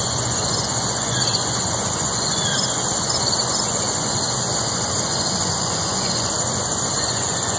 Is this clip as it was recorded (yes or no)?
no